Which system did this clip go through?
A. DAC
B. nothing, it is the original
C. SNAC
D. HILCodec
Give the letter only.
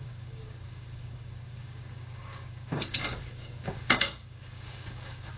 A